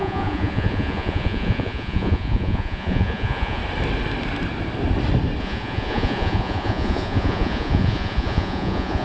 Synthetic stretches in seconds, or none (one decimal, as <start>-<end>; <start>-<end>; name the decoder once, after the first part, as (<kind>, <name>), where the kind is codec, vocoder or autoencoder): 0.0-3.6 (vocoder, Vocos); 5.4-9.0